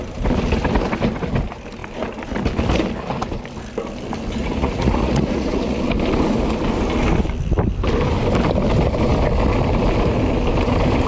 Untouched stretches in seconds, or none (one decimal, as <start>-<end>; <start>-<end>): 0.0-4.4; 5.8-11.1